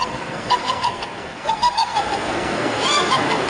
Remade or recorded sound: remade